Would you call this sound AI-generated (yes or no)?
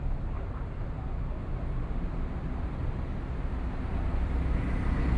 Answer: no